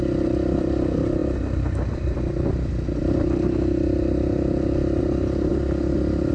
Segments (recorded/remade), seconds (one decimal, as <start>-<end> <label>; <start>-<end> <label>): 0.0-6.3 recorded